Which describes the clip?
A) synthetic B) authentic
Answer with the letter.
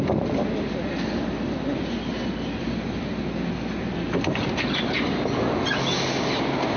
B